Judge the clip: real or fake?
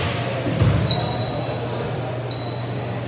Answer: real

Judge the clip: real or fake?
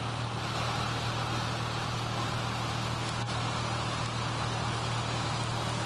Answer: real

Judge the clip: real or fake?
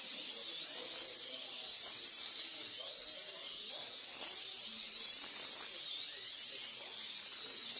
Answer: real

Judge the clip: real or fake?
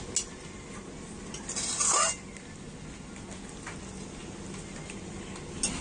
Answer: real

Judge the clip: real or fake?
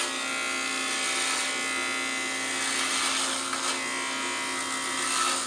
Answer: real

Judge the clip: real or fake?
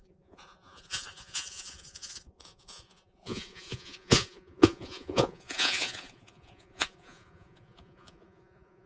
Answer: fake